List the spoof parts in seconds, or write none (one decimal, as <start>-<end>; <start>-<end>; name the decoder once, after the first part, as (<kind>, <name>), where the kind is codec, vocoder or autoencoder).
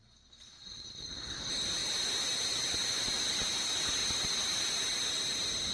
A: none